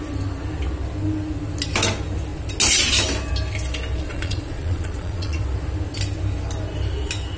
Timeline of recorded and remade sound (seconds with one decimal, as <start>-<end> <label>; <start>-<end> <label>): 0.0-4.1 recorded; 4.1-5.4 remade; 5.4-7.4 recorded